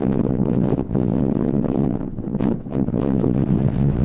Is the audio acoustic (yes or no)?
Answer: no